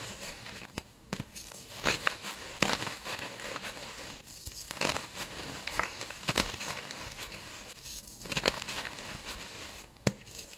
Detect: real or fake fake